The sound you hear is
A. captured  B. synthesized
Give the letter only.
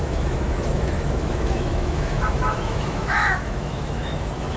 B